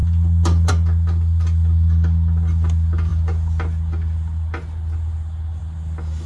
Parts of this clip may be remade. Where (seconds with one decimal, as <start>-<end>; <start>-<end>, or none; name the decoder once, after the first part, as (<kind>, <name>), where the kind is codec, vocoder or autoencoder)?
none